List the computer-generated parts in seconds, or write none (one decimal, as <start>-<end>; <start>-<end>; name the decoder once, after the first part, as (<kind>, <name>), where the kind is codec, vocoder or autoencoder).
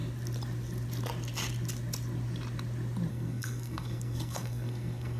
3.1-5.2 (codec, SNAC)